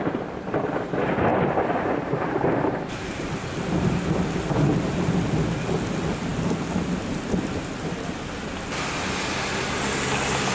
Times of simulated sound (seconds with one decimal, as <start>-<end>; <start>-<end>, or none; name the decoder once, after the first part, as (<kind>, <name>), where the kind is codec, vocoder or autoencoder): 1.3-3.3 (vocoder, BigVGAN v2)